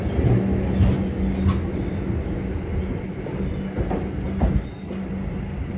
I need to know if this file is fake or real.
real